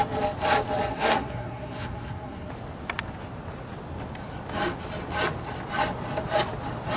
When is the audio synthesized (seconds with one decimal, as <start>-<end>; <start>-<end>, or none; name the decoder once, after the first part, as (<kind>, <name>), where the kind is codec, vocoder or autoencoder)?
0.9-2.5 (codec, SNAC)

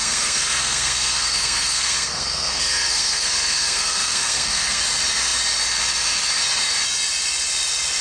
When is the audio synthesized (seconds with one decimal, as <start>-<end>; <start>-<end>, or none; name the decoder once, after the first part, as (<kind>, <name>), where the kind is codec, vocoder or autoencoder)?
0.0-4.8 (codec, SNAC)

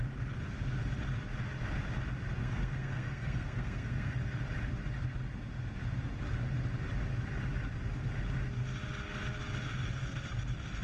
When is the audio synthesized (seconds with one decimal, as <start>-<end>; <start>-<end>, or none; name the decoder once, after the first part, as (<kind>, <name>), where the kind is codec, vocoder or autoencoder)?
2.4-4.1 (codec, SNAC)

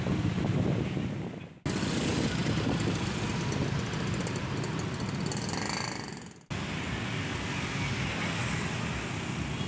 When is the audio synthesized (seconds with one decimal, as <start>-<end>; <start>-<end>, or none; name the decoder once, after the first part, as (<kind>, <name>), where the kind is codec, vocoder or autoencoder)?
none

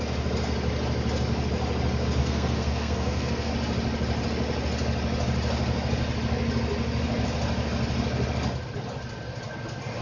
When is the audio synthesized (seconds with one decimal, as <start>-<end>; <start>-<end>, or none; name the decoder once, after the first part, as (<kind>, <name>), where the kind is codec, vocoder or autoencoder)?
2.2-3.5 (codec, SNAC)